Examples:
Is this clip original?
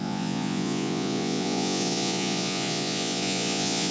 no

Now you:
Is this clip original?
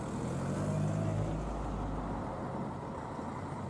yes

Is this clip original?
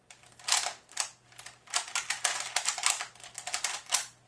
yes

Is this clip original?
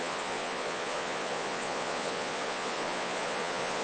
no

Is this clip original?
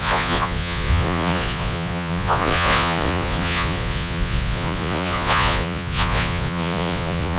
no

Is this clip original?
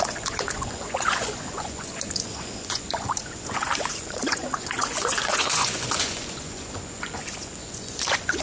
no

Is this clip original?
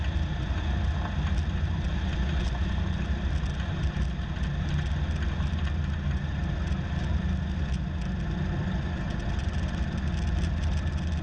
yes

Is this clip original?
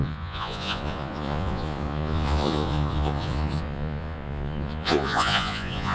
no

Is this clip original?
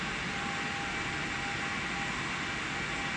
yes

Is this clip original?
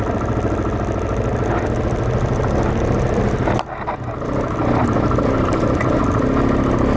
yes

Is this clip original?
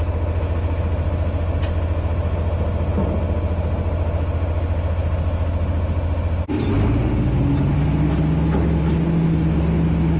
yes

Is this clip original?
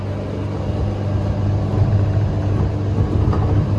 yes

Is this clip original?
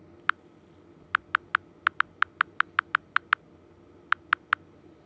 yes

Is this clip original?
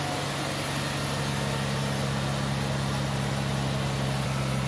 yes